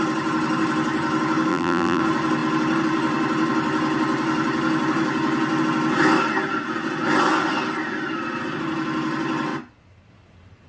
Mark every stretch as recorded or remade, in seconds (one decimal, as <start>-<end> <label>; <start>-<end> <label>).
0.0-1.5 recorded; 1.5-2.0 remade; 2.0-10.7 recorded